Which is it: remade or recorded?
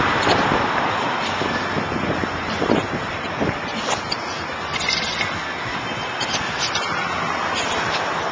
recorded